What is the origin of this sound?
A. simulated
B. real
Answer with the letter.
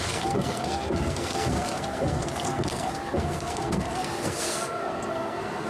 A